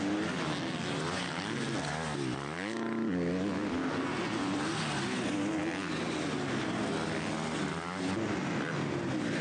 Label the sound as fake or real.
real